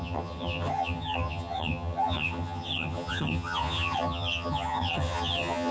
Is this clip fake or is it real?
fake